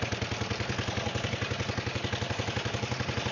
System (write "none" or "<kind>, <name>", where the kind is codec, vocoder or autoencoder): none